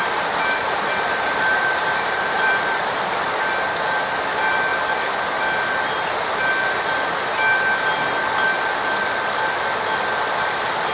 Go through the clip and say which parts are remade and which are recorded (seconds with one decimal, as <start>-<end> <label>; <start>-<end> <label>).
0.0-3.5 remade; 3.5-10.9 recorded